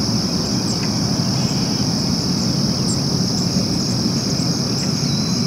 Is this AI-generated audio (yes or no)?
no